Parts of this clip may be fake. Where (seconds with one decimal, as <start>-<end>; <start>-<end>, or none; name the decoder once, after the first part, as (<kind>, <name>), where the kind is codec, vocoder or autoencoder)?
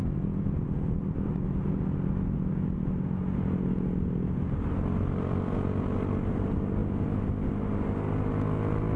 none